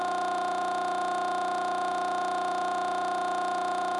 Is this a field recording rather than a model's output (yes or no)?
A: no